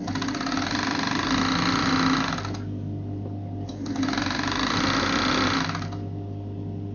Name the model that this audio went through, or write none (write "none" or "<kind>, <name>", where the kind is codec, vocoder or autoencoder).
none